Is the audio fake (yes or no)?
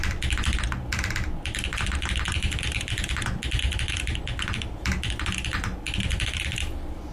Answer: no